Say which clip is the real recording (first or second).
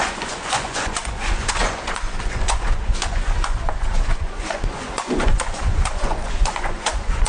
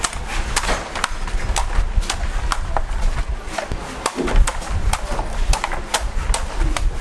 second